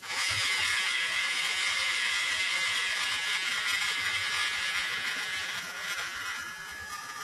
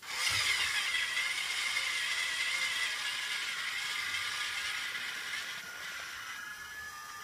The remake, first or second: first